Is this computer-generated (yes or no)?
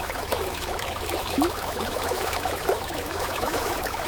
yes